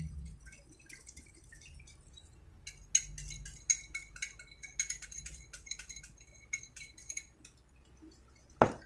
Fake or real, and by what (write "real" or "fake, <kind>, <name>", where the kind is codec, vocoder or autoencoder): real